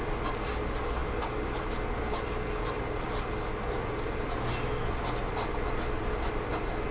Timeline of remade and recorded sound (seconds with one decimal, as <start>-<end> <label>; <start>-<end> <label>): 0.0-6.9 recorded